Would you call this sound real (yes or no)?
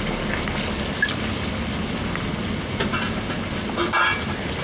yes